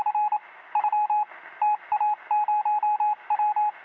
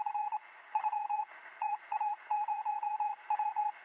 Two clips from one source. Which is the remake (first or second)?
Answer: second